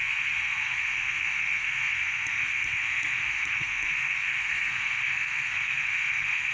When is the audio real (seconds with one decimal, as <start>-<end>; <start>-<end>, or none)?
none